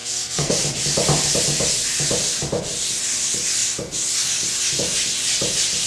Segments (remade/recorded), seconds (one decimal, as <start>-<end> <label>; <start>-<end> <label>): 0.0-0.6 remade; 0.6-5.9 recorded